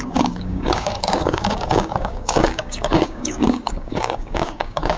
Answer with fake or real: fake